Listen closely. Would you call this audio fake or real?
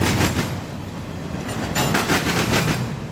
real